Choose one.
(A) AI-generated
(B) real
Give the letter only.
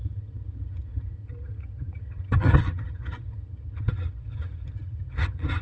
A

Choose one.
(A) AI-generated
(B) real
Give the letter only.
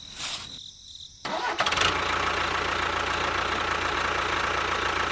B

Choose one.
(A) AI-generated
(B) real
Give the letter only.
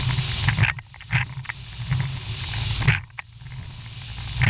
B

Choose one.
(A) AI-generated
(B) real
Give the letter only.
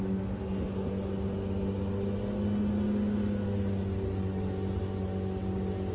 B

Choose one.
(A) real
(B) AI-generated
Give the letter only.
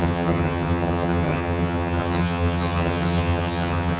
B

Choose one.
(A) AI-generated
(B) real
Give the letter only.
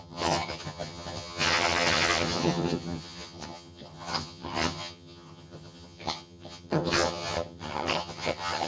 A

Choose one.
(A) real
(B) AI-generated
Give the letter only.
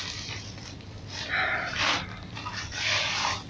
A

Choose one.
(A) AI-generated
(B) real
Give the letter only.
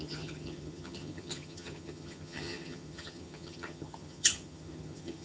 A